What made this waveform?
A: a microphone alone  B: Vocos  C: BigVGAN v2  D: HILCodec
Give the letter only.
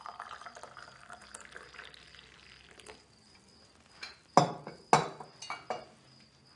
A